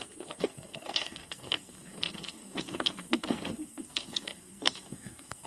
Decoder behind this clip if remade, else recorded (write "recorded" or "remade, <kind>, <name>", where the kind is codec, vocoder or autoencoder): remade, codec, SNAC